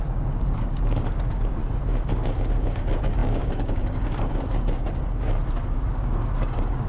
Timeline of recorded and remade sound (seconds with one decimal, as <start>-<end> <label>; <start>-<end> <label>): 0.0-1.6 remade; 1.6-2.1 recorded; 2.1-5.4 remade; 5.4-5.9 recorded; 5.9-6.9 remade